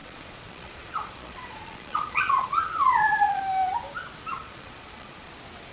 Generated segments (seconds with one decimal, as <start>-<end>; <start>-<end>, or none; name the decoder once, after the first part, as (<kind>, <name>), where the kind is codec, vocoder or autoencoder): 0.0-3.4 (vocoder, Vocos); 4.4-5.3

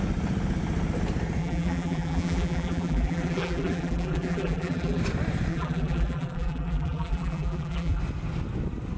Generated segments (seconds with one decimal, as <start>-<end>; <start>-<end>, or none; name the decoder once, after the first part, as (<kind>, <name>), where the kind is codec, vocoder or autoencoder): 1.4-5.0 (vocoder, BigVGAN v2); 5.5-8.0

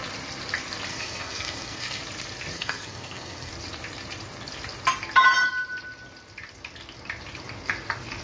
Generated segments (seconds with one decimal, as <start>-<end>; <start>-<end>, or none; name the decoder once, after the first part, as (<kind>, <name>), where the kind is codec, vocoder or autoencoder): 0.9-2.0 (codec, SNAC); 2.5-3.5

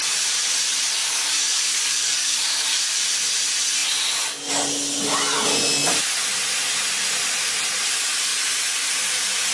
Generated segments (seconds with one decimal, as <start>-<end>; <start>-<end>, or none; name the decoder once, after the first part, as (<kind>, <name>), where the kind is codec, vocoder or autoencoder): 1.0-3.0 (codec, DAC)

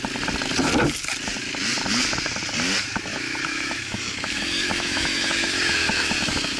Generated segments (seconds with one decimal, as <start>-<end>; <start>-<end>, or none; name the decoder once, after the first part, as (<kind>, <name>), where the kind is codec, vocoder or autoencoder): 3.1-6.6 (autoencoder, DAC-VAE)

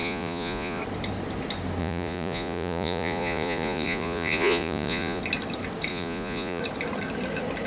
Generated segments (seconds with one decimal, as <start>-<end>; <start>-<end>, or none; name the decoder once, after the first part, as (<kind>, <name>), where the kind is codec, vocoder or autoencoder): 0.0-0.8 (vocoder, Vocos); 1.8-5.2; 5.9-6.6

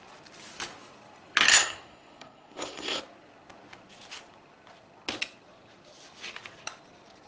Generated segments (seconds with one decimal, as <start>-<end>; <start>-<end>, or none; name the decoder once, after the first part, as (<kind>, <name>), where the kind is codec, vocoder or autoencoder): 1.5-3.0 (codec, SNAC)

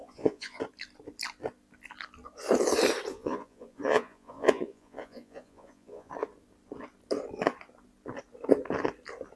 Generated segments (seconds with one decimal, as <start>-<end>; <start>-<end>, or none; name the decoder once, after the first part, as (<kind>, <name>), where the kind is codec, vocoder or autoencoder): 0.0-0.6 (vocoder, Vocos); 3.1-6.1